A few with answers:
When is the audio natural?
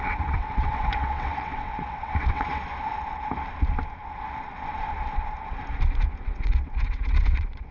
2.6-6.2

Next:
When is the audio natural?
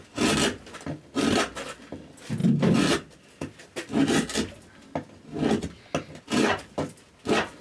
0.0-7.6